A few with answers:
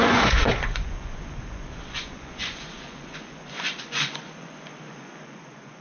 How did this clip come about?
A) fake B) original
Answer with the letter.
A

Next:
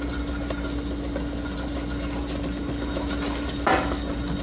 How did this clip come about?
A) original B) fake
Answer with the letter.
A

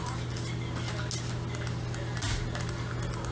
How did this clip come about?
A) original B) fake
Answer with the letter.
A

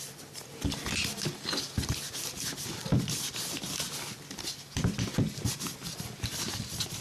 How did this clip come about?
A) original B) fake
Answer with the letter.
A